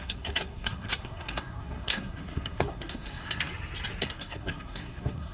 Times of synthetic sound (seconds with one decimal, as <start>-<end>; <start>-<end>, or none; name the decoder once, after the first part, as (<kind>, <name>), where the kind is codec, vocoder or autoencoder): 0.0-3.5 (codec, SNAC); 4.0-5.3